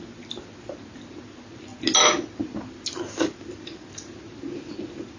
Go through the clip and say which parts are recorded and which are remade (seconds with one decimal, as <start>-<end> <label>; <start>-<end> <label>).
0.0-5.2 recorded